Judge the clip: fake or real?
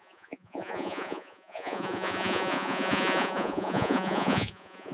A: fake